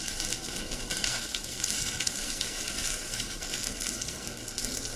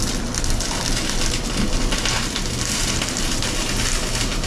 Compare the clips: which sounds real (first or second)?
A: second